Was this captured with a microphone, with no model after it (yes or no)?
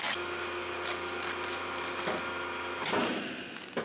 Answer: yes